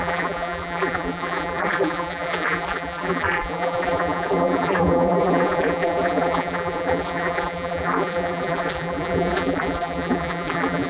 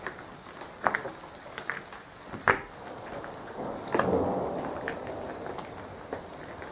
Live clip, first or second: second